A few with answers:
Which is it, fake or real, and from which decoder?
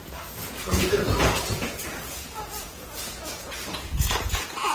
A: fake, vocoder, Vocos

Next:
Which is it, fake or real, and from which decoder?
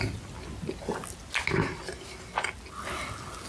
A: real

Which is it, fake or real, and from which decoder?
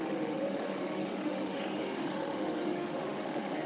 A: fake, autoencoder, DAC-VAE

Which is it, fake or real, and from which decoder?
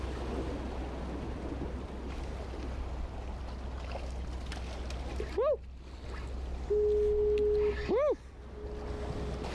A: real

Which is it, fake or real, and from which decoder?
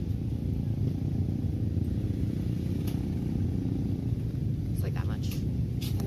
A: real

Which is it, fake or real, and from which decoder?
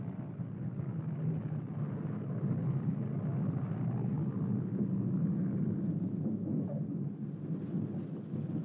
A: real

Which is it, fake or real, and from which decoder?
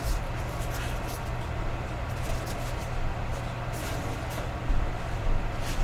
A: real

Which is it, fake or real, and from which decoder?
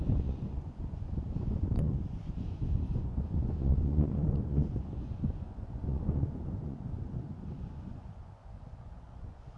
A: fake, vocoder, Vocos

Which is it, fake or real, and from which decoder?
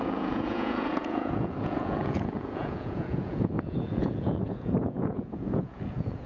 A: fake, vocoder, Vocos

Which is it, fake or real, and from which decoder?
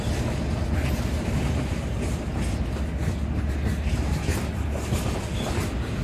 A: real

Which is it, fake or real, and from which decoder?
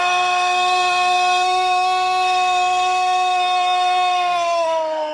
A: fake, codec, SNAC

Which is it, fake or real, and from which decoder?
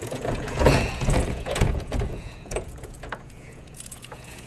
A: fake, vocoder, Vocos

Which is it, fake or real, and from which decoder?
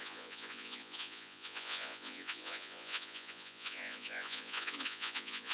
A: fake, vocoder, Vocos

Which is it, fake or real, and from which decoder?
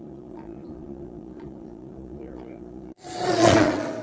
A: fake, vocoder, Vocos